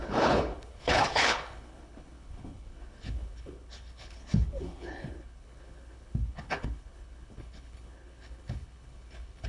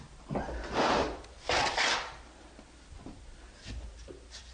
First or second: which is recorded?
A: second